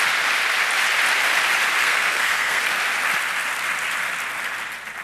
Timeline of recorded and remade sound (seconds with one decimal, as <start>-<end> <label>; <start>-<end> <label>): 0.0-1.8 recorded; 1.8-2.6 remade; 2.6-5.0 recorded